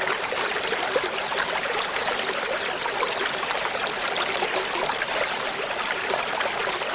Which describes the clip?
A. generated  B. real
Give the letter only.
A